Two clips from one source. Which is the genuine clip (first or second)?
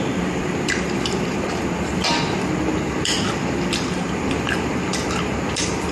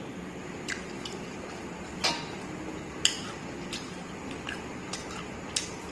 second